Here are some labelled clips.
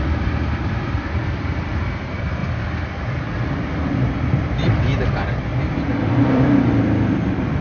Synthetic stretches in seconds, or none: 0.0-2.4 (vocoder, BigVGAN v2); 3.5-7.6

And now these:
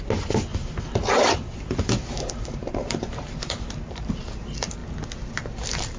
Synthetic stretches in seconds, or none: 0.5-4.1 (vocoder, BigVGAN v2)